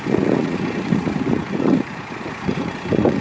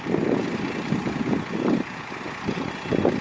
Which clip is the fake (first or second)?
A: first